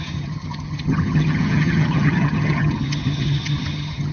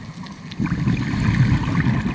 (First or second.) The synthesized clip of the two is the first